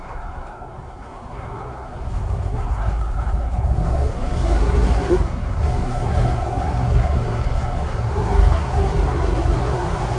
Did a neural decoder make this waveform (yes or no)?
yes